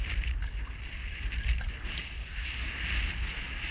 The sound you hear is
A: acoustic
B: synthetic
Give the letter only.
A